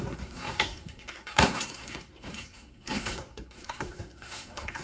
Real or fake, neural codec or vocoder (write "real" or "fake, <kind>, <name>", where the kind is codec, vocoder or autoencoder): fake, codec, SNAC